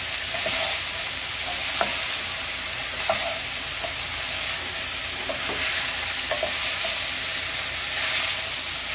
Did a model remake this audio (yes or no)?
no